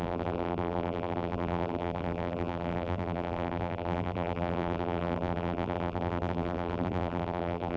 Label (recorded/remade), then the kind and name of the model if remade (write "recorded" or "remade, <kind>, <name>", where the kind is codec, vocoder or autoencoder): remade, vocoder, BigVGAN v2